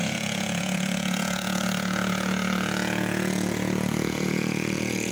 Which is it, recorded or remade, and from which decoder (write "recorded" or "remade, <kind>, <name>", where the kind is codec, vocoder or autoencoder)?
remade, vocoder, Vocos